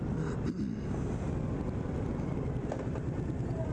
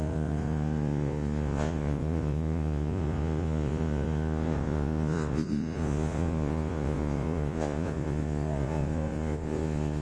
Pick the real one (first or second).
first